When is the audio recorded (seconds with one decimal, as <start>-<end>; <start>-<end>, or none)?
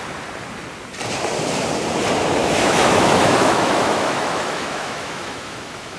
0.0-2.4